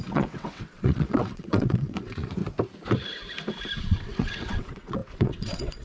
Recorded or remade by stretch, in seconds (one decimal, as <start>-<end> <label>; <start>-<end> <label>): 0.0-2.4 remade; 2.4-3.8 recorded; 3.8-5.8 remade